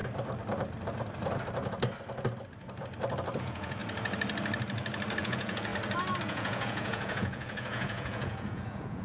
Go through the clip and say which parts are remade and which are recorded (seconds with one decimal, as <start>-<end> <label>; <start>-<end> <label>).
0.0-3.4 recorded; 3.4-3.8 remade; 3.8-5.2 recorded; 5.2-5.7 remade; 5.7-6.2 recorded; 6.2-9.0 remade